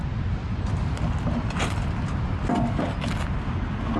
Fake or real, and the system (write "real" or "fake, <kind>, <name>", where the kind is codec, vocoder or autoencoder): real